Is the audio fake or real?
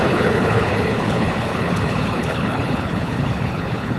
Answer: fake